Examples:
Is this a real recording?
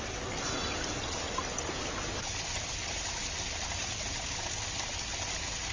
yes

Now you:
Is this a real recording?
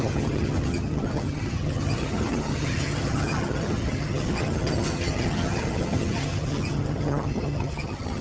no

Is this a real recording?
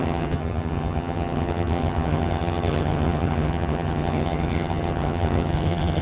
no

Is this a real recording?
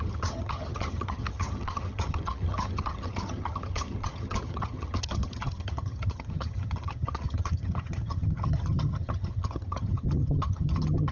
no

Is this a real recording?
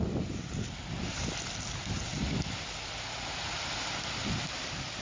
yes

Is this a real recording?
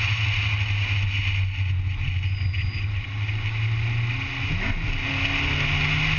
yes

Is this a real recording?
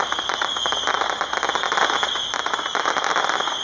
yes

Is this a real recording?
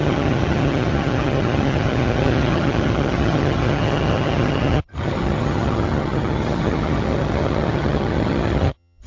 no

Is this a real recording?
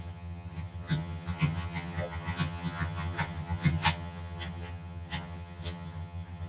no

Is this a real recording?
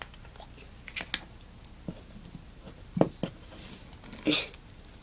yes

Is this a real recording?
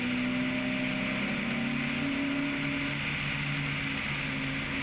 yes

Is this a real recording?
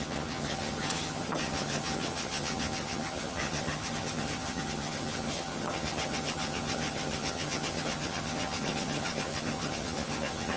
no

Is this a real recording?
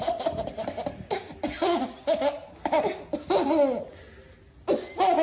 yes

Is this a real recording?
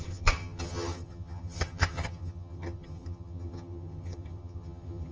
no